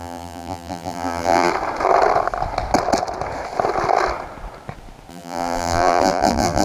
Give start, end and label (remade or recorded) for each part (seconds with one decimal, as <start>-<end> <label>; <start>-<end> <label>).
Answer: 0.0-1.5 remade; 1.5-5.1 recorded; 5.1-6.6 remade